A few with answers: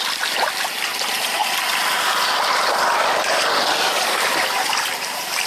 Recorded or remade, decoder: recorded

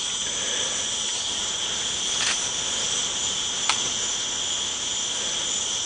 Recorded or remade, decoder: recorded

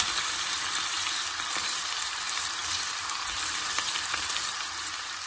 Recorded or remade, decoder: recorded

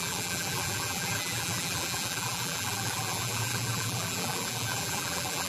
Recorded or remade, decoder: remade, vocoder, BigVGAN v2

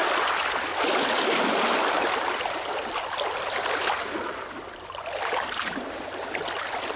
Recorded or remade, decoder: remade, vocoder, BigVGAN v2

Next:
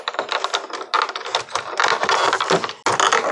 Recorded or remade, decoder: recorded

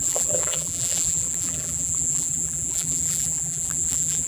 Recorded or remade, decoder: remade, vocoder, BigVGAN v2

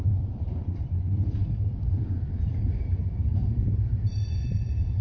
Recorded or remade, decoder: remade, vocoder, BigVGAN v2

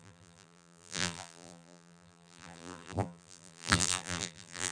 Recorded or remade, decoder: remade, vocoder, BigVGAN v2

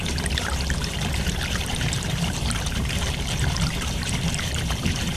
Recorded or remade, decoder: remade, vocoder, BigVGAN v2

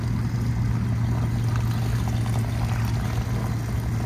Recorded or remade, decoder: recorded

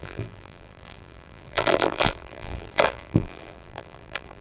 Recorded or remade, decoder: remade, vocoder, BigVGAN v2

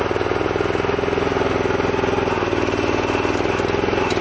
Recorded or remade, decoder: recorded